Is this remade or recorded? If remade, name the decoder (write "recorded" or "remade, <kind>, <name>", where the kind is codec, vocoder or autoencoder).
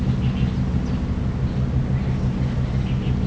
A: recorded